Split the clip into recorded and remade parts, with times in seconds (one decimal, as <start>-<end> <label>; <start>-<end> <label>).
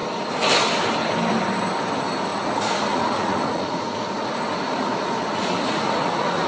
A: 0.0-2.3 recorded; 2.3-6.5 remade